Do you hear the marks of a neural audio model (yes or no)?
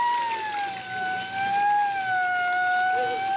no